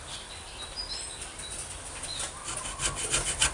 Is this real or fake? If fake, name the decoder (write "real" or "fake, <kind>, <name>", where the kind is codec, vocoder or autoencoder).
real